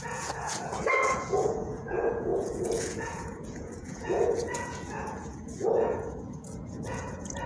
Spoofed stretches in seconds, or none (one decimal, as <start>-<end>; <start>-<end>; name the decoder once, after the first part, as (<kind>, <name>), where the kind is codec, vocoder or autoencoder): 0.0-7.5 (vocoder, Vocos)